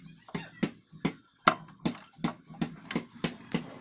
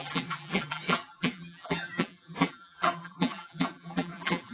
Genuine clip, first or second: first